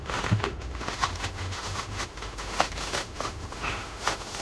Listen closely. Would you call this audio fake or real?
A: fake